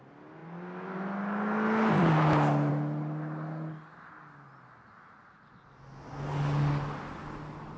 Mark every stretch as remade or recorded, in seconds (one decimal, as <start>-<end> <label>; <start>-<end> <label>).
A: 0.0-7.8 recorded